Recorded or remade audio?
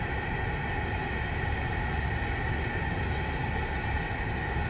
recorded